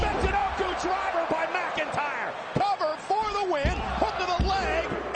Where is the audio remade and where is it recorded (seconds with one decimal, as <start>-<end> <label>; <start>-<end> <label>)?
0.0-0.4 recorded; 0.4-1.1 remade; 1.1-5.2 recorded